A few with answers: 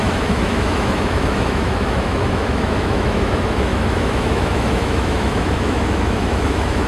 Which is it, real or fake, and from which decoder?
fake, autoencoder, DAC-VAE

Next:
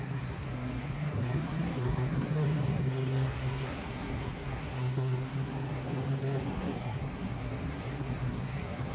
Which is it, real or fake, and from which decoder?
fake, codec, SNAC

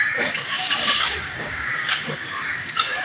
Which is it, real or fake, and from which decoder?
fake, codec, DAC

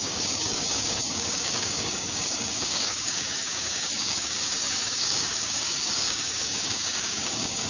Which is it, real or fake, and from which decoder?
fake, codec, DAC